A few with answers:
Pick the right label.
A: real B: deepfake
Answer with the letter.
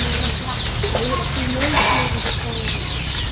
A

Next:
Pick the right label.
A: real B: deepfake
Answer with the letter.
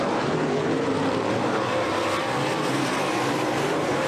B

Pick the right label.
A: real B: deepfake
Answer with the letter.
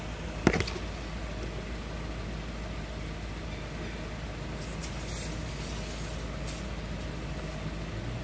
A